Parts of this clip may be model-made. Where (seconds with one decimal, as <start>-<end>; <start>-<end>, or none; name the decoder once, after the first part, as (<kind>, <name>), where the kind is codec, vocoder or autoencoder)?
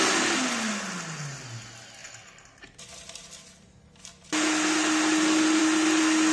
none